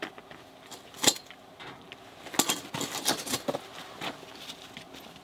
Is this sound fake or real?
real